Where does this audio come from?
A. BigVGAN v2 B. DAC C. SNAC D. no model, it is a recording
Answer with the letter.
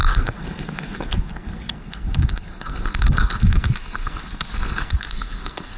C